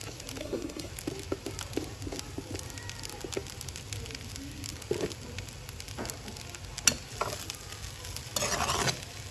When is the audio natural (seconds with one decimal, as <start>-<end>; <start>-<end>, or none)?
0.0-0.4; 0.9-9.3